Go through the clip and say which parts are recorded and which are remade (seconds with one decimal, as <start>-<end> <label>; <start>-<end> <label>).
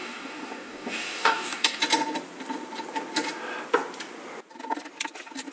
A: 0.0-1.8 remade; 1.8-5.5 recorded